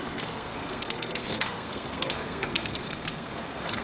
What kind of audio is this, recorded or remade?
remade